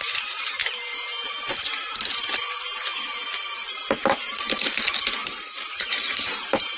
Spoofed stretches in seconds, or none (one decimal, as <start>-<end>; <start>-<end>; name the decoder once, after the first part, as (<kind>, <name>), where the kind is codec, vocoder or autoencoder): 5.2-6.8 (vocoder, BigVGAN v2)